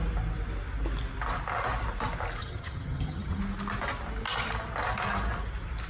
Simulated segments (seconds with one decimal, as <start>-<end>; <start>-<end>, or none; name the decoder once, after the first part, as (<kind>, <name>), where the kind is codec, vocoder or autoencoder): 2.4-3.4 (vocoder, HiFi-GAN)